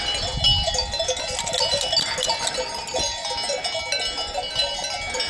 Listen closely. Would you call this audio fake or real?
real